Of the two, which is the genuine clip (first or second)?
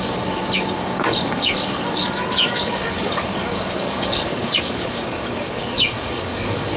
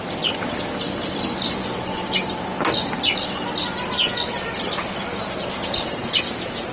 second